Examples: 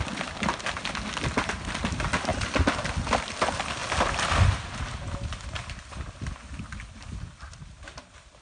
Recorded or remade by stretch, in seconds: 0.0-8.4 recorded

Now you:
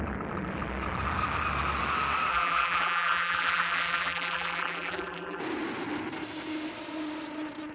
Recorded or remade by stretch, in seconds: 0.0-2.3 recorded; 2.3-5.4 remade; 5.4-7.7 recorded

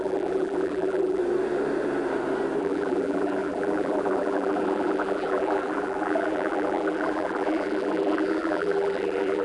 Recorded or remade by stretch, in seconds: 0.0-1.2 remade; 1.2-2.6 recorded; 2.6-9.4 remade

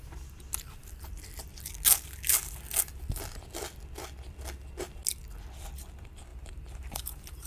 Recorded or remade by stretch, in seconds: 0.0-6.3 recorded; 6.3-7.5 remade

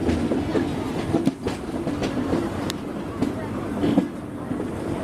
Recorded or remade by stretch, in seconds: 0.0-5.0 recorded

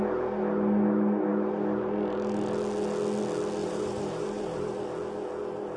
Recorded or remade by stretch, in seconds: 0.0-3.6 recorded; 3.6-4.8 remade; 4.8-5.8 recorded

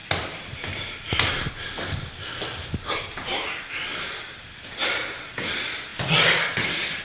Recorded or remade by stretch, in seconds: 0.0-1.5 remade; 1.5-3.9 recorded; 3.9-4.9 remade; 4.9-7.0 recorded

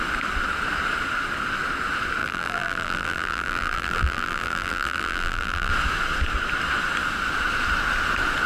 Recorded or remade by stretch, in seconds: 0.0-2.2 recorded; 2.2-5.7 remade; 5.7-8.5 recorded